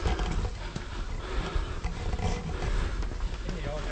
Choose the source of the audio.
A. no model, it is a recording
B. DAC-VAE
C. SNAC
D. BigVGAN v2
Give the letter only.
A